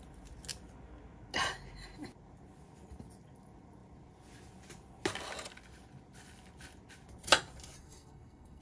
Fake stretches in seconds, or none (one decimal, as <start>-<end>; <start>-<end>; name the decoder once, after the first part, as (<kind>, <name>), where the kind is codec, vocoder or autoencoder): 7.8-8.6 (codec, SNAC)